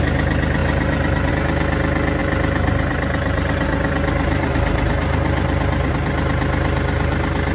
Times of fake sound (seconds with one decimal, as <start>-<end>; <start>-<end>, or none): 0.6-1.3; 2.2-5.9